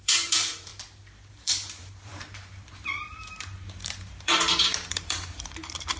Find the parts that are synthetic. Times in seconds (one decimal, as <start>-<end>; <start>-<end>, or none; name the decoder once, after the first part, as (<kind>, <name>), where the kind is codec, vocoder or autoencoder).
0.0-0.7 (vocoder, BigVGAN v2); 1.3-6.0